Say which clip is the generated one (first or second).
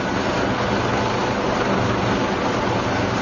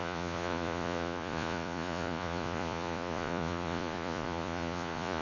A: second